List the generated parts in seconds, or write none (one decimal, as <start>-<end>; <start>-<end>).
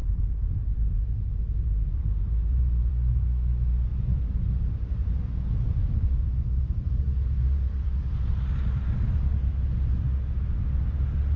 0.0-2.9; 3.9-5.2; 5.8-8.1